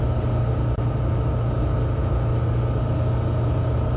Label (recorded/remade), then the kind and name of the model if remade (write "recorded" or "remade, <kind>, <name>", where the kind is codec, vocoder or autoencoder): recorded